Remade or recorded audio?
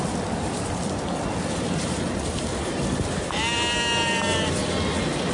recorded